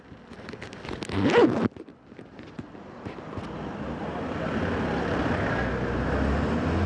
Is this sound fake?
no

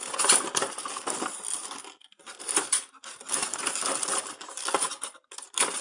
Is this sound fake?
no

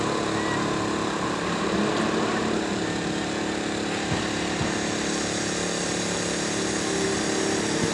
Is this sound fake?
no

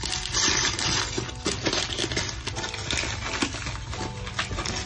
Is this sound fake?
no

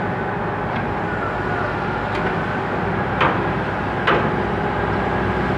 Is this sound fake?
no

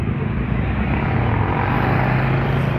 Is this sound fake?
no